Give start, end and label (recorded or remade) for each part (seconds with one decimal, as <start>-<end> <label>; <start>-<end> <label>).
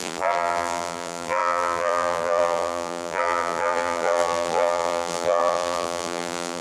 0.0-6.6 remade